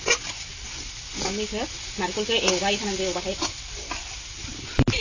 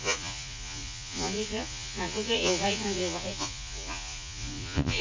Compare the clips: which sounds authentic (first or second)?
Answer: first